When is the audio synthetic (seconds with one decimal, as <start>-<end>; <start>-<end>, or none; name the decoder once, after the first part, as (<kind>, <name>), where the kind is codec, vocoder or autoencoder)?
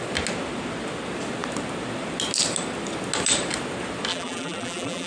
4.1-5.1 (vocoder, BigVGAN v2)